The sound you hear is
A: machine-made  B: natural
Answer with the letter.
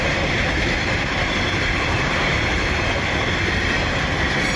B